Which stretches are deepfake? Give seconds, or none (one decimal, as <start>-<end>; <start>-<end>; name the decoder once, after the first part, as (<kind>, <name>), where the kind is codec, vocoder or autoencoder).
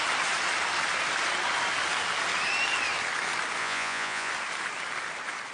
3.6-4.3 (vocoder, Vocos)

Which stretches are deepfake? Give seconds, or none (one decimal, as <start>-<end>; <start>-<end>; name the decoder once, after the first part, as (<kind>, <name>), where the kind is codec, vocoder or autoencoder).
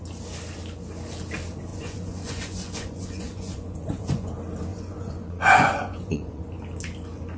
1.7-4.3 (vocoder, Vocos); 4.7-6.4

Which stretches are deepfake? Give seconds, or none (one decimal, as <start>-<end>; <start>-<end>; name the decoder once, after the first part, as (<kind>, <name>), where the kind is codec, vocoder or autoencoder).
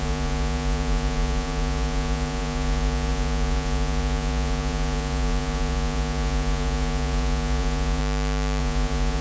0.0-8.0 (vocoder, Vocos); 8.6-9.2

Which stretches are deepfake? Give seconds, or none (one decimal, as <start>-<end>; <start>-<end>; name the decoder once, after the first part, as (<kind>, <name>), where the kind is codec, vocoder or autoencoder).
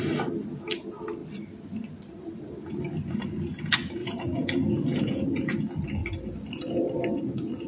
4.0-5.6 (vocoder, Vocos)